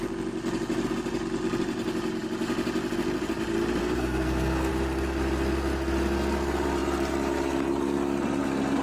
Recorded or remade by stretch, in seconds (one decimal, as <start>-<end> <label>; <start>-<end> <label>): 0.0-3.8 recorded; 3.8-4.7 remade; 4.7-8.8 recorded